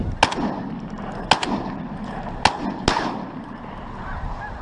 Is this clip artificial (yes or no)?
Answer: no